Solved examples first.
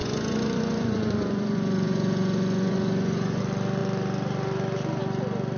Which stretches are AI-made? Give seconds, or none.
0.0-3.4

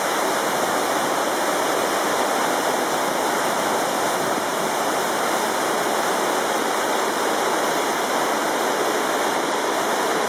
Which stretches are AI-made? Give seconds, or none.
none

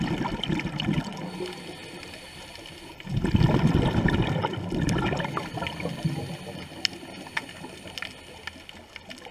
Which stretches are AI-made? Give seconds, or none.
none